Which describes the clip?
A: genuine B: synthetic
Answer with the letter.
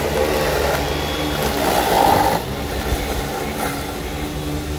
A